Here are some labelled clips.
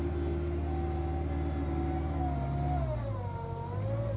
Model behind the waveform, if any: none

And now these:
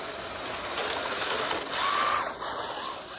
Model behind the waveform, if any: none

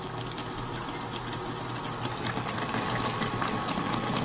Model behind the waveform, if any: none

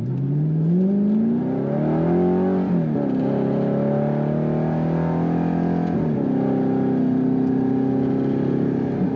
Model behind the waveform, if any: none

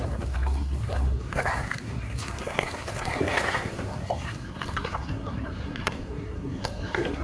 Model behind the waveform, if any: codec, SNAC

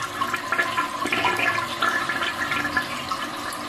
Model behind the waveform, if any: none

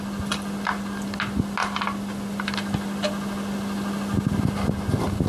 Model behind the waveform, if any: none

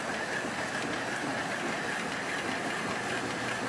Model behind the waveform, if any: none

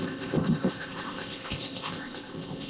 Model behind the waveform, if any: codec, ZipCodec